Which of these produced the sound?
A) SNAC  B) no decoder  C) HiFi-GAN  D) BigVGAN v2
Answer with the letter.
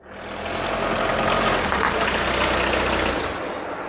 B